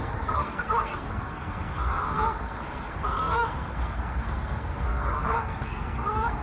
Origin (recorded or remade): remade